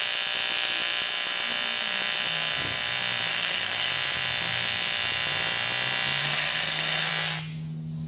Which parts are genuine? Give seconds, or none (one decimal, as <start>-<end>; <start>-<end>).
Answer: 0.0-3.3; 3.9-6.2; 7.1-8.1